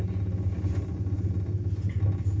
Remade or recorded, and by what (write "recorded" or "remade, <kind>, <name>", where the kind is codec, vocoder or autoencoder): recorded